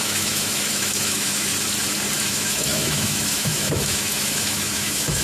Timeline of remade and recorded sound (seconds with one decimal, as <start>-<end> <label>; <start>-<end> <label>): 0.0-1.5 remade; 1.5-2.2 recorded; 2.2-5.2 remade